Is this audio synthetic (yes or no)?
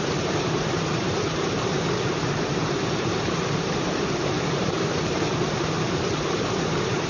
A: yes